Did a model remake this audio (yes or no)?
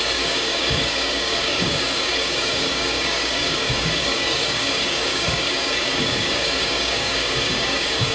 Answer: yes